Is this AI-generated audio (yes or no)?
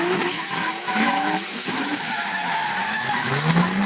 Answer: yes